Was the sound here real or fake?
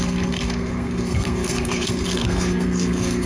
fake